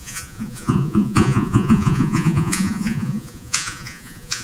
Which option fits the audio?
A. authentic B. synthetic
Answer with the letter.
B